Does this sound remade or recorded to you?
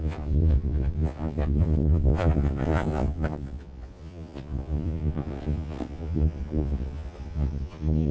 remade